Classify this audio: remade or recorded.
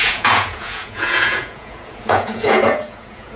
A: remade